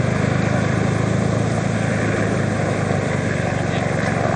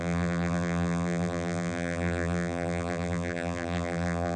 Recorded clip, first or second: first